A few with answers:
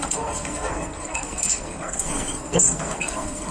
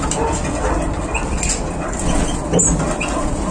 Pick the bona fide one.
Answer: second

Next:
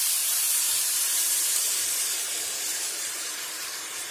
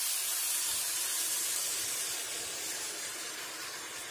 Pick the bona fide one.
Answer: second